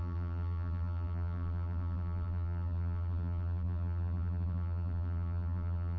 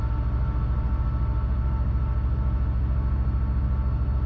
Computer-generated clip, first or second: first